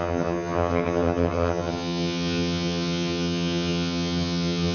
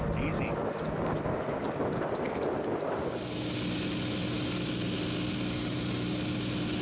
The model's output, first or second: first